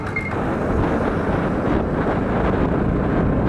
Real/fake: real